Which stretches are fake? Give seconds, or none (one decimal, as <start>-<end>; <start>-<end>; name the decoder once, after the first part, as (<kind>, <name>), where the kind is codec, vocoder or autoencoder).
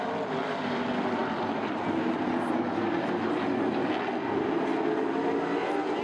none